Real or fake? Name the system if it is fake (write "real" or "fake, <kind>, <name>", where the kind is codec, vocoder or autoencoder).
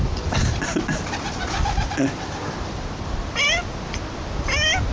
real